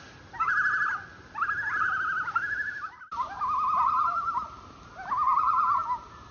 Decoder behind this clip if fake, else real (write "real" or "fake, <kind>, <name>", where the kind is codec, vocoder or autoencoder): real